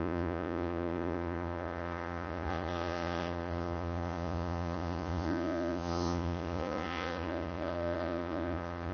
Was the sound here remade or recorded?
remade